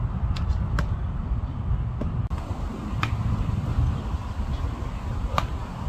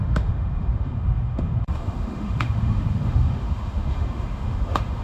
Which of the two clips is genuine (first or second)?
first